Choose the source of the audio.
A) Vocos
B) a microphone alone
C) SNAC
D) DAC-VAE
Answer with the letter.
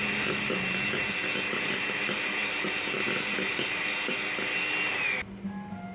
B